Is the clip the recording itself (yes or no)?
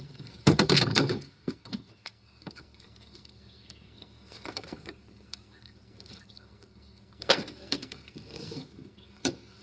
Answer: no